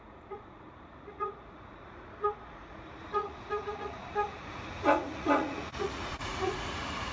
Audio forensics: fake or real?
fake